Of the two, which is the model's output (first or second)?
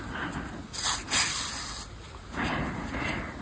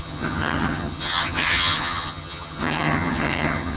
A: second